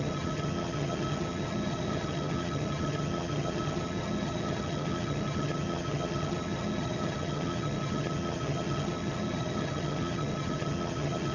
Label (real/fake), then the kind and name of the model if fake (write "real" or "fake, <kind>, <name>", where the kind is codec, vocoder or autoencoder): fake, vocoder, HiFi-GAN